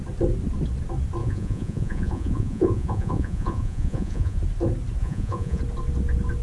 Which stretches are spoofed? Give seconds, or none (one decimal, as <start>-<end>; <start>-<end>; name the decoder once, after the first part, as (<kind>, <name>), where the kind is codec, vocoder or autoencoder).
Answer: 1.2-4.4 (vocoder, Vocos); 5.0-5.6